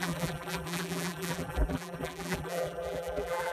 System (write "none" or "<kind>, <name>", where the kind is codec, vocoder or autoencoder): vocoder, BigVGAN v2